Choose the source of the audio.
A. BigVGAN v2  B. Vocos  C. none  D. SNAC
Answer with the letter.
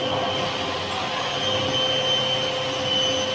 C